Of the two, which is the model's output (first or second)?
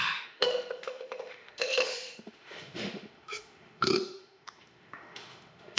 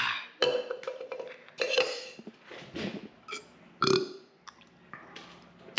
first